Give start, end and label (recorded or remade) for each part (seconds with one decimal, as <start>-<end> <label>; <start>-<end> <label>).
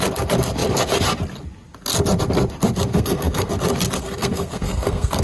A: 0.0-2.9 recorded; 2.9-3.5 remade; 3.5-4.0 recorded; 4.0-5.2 remade